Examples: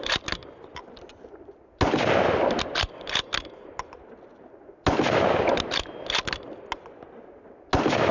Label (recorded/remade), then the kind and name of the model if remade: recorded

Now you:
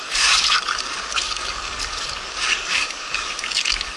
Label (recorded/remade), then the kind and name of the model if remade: remade, codec, DAC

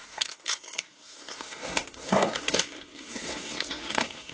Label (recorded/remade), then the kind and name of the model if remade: remade, codec, SNAC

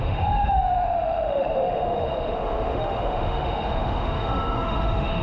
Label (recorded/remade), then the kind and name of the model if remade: remade, autoencoder, DAC-VAE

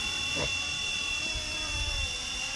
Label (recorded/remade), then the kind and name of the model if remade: remade, vocoder, BigVGAN v2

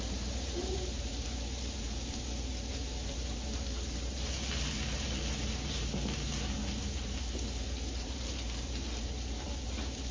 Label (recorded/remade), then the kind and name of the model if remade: remade, vocoder, BigVGAN v2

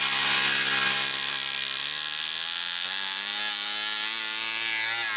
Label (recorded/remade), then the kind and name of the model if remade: recorded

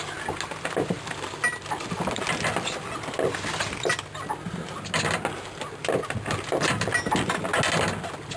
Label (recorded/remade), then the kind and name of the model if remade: recorded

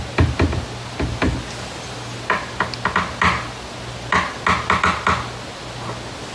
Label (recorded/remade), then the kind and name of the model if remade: recorded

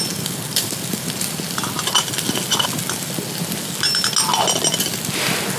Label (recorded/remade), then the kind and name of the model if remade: recorded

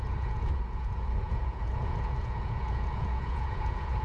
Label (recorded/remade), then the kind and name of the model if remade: remade, vocoder, Vocos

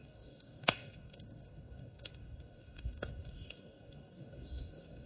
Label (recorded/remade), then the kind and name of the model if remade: remade, codec, DAC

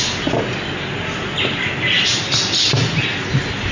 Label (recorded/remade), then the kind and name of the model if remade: recorded